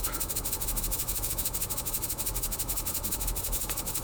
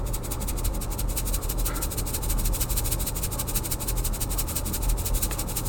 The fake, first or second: first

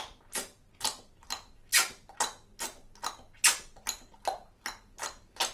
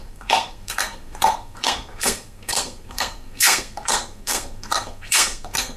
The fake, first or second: second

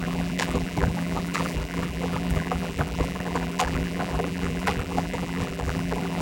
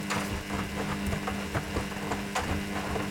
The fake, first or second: first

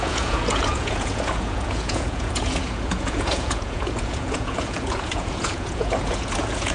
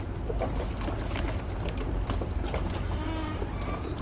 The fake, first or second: first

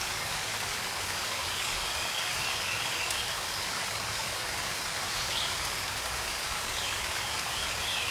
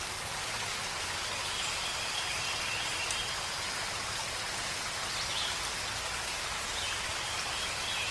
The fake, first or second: first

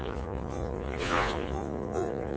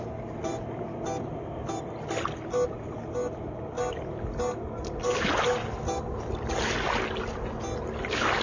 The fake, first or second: first